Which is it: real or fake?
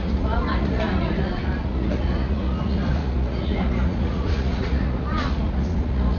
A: fake